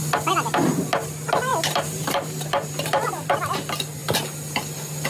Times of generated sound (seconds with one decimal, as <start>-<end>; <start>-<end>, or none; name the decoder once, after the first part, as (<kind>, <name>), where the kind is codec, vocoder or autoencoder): 1.5-3.3 (vocoder, BigVGAN v2)